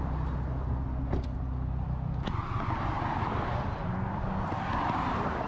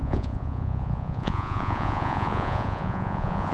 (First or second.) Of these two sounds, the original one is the first